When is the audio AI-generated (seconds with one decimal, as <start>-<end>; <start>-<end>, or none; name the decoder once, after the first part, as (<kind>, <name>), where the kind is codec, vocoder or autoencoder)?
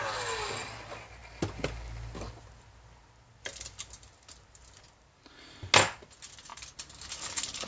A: none